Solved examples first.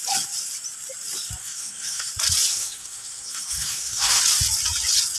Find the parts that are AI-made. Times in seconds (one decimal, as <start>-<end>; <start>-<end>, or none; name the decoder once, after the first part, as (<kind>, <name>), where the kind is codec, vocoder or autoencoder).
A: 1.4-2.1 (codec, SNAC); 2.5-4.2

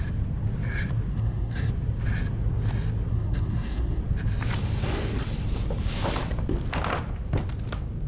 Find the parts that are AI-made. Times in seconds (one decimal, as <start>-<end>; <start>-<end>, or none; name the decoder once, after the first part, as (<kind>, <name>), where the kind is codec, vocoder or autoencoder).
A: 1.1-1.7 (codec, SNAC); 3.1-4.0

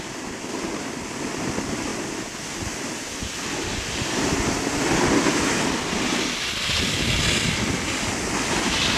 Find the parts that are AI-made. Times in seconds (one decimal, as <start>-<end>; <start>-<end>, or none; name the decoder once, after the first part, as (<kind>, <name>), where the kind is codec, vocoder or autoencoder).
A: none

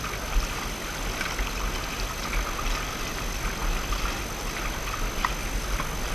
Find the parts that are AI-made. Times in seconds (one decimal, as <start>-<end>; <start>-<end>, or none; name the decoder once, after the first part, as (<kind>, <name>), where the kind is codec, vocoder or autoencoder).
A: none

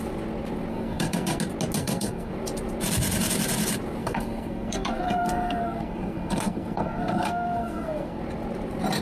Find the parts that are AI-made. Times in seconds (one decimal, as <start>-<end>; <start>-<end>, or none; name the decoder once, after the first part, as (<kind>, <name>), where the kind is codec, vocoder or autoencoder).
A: 0.7-1.4 (codec, SNAC); 1.8-2.3; 4.0-8.2

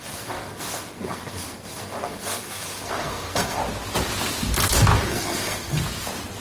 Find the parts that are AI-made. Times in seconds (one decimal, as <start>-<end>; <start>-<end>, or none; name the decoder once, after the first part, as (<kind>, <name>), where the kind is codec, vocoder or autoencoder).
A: 0.0-3.6 (codec, SNAC); 5.1-5.8

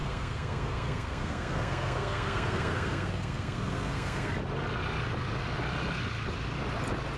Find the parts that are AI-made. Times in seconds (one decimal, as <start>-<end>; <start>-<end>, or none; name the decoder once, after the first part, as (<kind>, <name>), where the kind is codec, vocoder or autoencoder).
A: 0.0-4.3 (codec, SNAC)

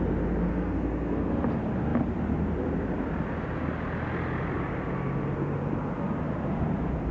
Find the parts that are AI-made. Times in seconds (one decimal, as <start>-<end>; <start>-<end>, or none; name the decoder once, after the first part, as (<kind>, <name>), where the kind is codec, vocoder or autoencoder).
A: 0.4-1.3 (codec, SNAC)